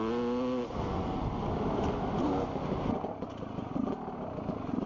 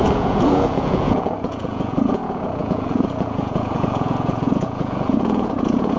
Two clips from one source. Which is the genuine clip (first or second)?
first